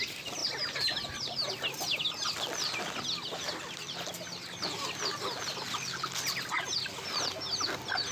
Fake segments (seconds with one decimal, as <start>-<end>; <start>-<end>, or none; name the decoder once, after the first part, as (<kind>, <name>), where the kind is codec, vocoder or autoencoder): none